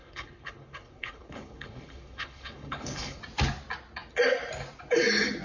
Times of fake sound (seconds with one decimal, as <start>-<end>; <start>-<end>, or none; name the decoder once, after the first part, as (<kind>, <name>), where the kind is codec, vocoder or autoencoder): 0.0-3.2 (codec, HILCodec)